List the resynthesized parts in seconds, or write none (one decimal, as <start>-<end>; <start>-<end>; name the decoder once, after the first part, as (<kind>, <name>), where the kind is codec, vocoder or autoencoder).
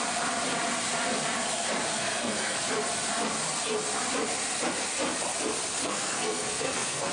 1.9-2.6 (codec, SNAC); 5.8-7.1